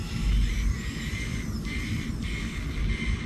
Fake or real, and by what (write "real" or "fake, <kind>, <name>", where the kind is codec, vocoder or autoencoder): real